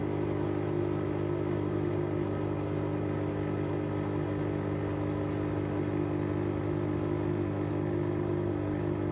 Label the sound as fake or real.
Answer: real